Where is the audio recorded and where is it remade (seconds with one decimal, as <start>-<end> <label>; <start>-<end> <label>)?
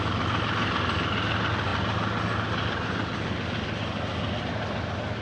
0.0-5.2 recorded